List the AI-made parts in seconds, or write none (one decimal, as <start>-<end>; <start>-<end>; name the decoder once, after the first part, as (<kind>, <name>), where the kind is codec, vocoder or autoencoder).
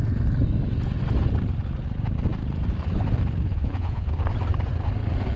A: 3.5-4.1 (vocoder, Vocos)